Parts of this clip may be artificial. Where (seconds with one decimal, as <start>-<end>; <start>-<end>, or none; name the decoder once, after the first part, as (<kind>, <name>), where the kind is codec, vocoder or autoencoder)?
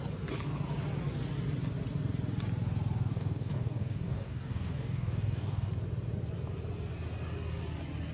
3.1-5.7 (codec, DAC)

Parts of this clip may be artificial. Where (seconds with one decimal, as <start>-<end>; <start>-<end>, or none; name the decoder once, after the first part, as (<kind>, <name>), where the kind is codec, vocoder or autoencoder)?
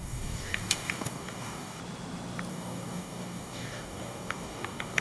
0.0-1.8 (codec, DAC); 2.5-5.0